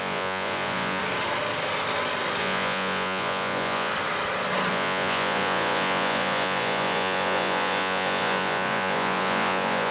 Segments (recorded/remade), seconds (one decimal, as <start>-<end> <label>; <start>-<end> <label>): 0.0-1.0 remade; 1.0-2.4 recorded; 2.4-3.9 remade; 3.9-4.7 recorded; 4.7-9.9 remade